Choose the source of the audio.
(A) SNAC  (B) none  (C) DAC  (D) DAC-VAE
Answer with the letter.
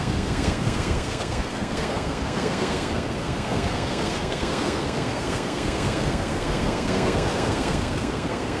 A